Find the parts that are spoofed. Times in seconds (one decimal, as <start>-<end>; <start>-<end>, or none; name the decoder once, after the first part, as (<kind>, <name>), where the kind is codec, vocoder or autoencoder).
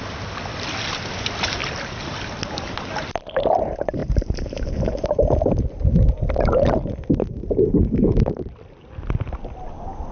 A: 4.0-5.6 (vocoder, BigVGAN v2)